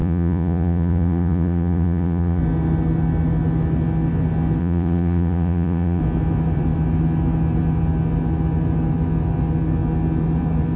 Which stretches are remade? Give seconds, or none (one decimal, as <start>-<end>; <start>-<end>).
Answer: 0.0-2.4; 4.6-6.0

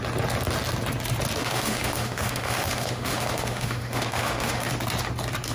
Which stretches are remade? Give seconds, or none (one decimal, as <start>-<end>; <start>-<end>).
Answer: 1.4-4.7

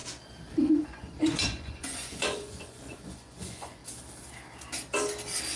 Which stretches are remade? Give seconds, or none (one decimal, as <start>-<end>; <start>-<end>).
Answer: 0.7-3.8

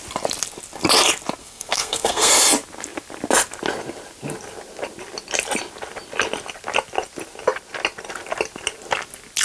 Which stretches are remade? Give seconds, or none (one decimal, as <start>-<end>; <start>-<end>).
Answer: 1.4-2.3

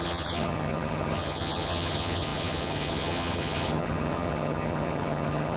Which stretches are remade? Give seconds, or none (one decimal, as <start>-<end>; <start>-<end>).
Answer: 0.0-5.6

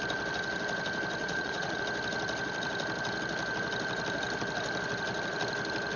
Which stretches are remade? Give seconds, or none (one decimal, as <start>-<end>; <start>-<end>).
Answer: 1.2-1.8

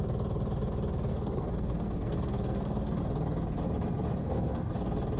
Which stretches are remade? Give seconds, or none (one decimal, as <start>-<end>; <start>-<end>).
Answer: 1.1-3.0; 4.2-4.7